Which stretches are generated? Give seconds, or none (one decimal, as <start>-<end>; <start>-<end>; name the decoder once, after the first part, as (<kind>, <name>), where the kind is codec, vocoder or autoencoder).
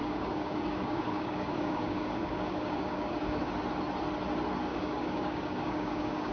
0.0-3.5 (codec, DAC); 4.7-6.3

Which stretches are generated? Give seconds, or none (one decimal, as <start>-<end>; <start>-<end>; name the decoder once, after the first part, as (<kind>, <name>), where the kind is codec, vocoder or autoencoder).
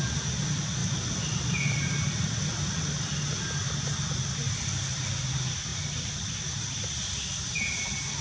none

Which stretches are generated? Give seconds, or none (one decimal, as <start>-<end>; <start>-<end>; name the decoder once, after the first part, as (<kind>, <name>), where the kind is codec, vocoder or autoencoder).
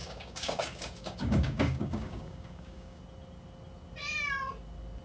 0.0-3.0 (codec, DAC)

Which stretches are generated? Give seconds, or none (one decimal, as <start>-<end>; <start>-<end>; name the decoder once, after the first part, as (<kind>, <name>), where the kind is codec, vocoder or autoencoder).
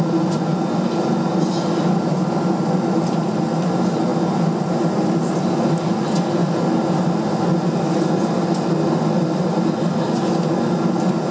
none